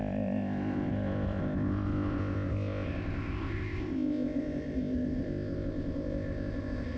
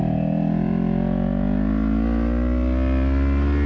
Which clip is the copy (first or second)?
first